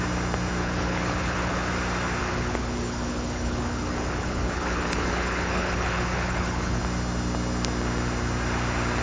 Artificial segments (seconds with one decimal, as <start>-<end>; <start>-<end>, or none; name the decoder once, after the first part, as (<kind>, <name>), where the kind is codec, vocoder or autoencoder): 0.6-1.7 (codec, HILCodec); 2.2-6.8